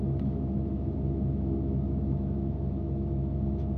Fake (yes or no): yes